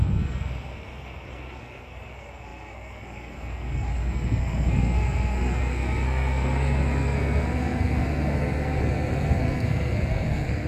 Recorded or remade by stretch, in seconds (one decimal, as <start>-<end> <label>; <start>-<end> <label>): 0.0-10.7 remade